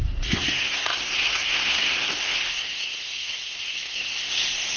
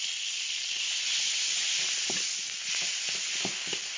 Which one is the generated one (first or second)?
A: first